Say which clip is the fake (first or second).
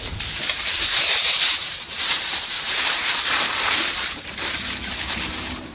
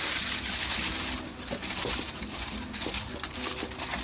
first